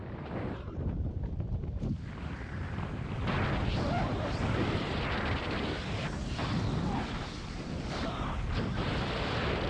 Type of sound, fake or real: fake